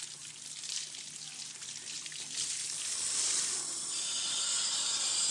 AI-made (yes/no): no